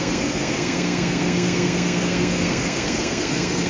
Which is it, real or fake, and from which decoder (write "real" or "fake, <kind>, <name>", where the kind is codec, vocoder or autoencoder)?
fake, codec, SNAC